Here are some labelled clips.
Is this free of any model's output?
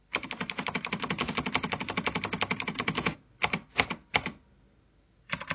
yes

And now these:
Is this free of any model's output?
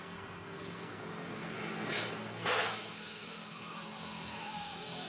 no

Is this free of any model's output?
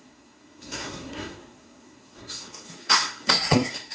no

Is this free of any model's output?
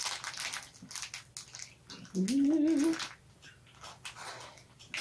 yes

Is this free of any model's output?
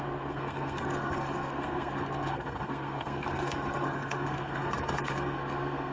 no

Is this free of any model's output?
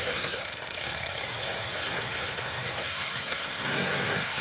no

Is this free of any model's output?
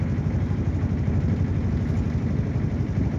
yes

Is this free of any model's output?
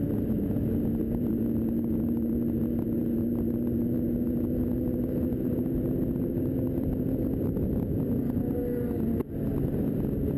yes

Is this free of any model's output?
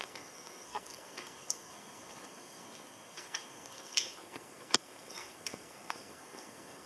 no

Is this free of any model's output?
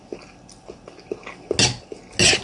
yes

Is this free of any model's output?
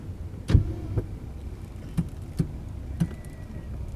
yes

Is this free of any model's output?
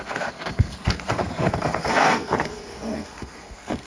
no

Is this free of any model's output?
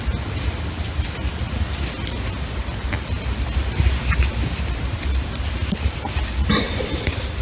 yes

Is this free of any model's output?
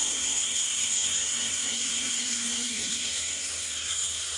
no